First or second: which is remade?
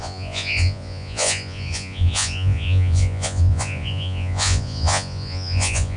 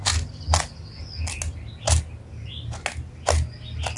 first